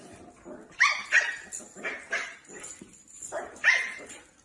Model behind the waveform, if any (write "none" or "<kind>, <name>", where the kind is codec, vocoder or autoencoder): none